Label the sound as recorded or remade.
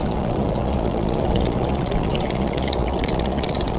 remade